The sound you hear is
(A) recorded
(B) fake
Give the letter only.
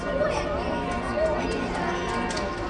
A